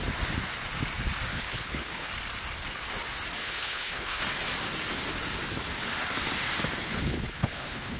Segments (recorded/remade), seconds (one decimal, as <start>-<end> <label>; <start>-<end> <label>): 0.0-1.3 recorded; 1.3-2.1 remade; 2.1-3.4 recorded; 3.4-4.2 remade; 4.2-6.8 recorded; 6.8-8.0 remade